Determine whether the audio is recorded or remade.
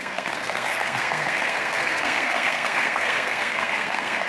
remade